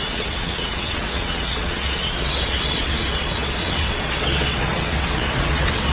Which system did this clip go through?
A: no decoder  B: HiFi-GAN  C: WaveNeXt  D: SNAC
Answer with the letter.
C